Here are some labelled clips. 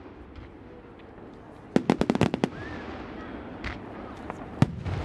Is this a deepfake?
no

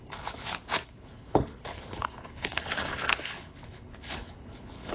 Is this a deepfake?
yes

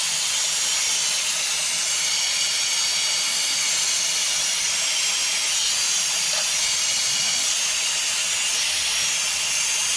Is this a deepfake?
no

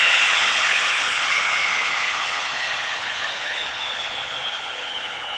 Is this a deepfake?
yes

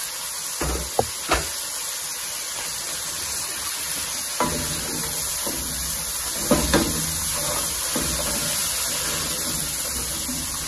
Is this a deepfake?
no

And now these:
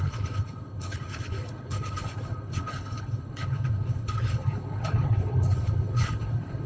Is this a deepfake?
yes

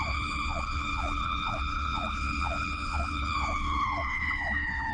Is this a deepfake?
yes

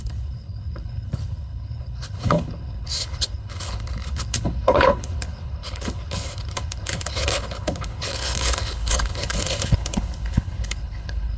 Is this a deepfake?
yes